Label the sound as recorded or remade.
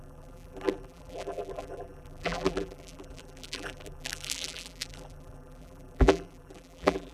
remade